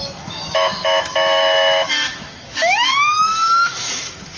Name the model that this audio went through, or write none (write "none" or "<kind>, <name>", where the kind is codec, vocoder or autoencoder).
autoencoder, DAC-VAE